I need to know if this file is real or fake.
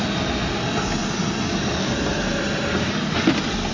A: real